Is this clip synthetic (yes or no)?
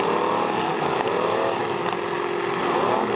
no